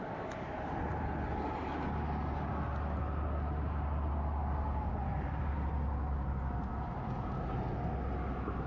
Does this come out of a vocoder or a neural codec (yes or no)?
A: no